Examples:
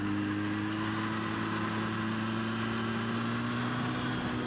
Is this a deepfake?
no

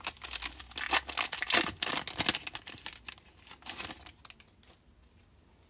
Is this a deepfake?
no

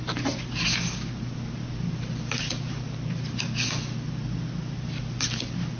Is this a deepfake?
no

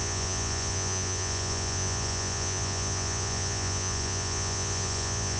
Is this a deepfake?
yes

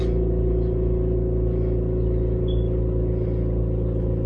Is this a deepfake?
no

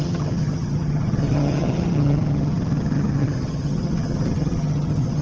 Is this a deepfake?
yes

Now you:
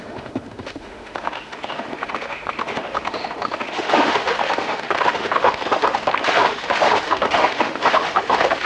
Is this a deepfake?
yes